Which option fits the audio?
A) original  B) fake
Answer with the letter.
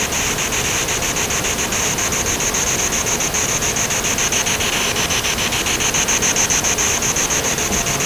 A